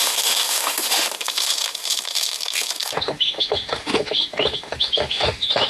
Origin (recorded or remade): remade